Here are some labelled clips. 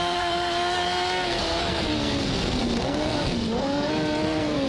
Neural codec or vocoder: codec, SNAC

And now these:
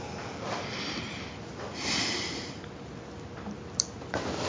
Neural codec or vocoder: none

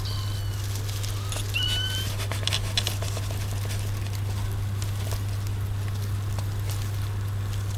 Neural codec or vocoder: none